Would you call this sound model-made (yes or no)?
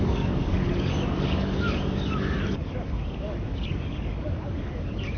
yes